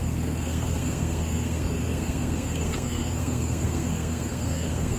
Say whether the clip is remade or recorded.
remade